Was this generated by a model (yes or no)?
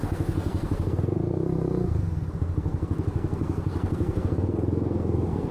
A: yes